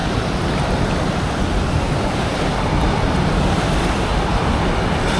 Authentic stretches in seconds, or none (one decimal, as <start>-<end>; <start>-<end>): 0.0-3.1; 4.1-5.2